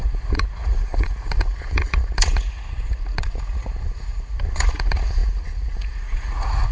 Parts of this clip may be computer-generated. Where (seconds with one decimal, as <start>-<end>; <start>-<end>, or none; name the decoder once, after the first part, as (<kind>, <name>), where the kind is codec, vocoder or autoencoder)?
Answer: 0.0-6.7 (vocoder, Vocos)

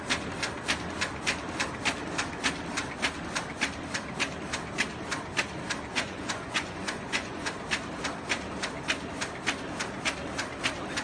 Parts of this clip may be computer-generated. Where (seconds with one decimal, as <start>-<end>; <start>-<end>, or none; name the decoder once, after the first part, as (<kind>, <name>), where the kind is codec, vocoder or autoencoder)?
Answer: 5.9-7.5 (vocoder, Vocos)